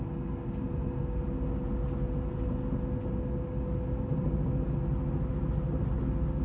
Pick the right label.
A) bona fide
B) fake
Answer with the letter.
A